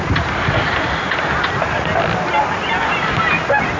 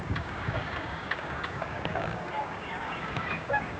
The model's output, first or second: second